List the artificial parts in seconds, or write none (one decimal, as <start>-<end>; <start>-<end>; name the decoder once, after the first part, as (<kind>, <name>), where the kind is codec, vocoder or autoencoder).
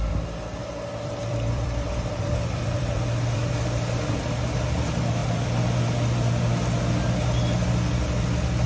0.6-3.5 (vocoder, BigVGAN v2); 5.2-5.8